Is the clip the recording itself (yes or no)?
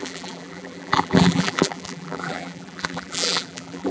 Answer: no